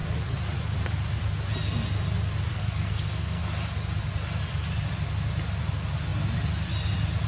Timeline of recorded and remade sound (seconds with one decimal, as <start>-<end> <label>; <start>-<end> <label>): 0.0-2.5 recorded; 2.5-3.4 remade; 3.4-7.3 recorded